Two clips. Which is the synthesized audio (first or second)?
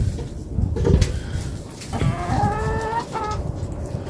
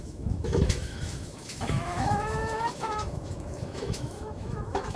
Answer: second